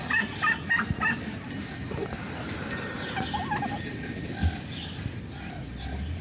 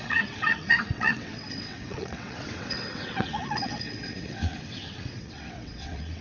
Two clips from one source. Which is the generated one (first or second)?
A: second